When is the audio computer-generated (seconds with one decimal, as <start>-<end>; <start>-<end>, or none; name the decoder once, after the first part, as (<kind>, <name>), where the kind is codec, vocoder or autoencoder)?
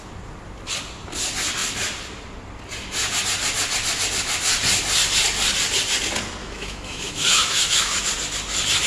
6.4-8.1 (autoencoder, DAC-VAE)